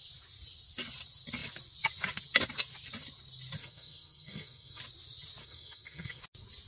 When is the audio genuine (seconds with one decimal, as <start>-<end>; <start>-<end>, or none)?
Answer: 0.0-3.6; 4.8-5.4; 6.2-6.7

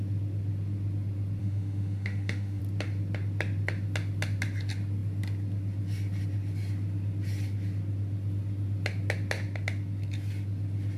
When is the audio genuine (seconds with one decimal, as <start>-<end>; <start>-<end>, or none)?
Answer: 0.0-1.4; 2.6-11.0

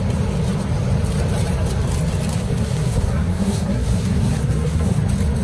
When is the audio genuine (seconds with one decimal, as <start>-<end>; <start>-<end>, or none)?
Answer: 0.0-2.3; 5.0-5.4

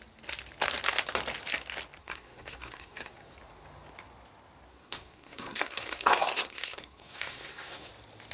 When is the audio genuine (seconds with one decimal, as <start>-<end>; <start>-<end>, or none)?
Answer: 0.0-2.0; 3.3-4.7; 7.9-8.3

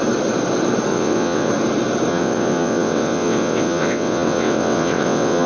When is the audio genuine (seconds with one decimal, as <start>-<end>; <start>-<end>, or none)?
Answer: 0.0-0.9; 1.5-2.1

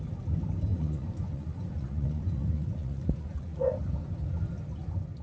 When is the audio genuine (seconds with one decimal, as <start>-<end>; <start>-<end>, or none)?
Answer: 0.0-0.7; 3.8-5.2